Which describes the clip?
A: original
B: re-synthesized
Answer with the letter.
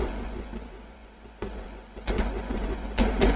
B